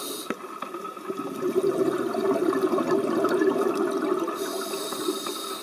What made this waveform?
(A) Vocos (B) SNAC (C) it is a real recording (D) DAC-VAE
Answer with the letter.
C